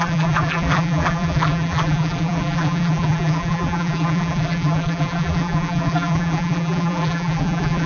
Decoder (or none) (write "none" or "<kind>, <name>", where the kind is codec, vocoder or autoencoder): vocoder, BigVGAN v2